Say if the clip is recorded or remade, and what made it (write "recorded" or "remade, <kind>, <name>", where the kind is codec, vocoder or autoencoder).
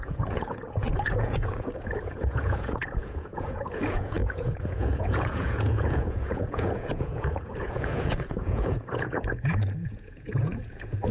remade, vocoder, Vocos